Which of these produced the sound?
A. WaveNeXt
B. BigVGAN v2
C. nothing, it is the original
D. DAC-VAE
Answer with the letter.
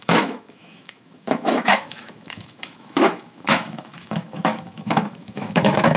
D